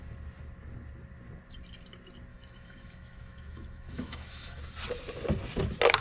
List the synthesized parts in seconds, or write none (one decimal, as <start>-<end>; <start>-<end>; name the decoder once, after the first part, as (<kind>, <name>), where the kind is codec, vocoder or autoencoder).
2.3-4.6 (autoencoder, DAC-VAE)